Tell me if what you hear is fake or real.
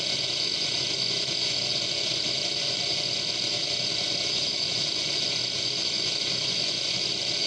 fake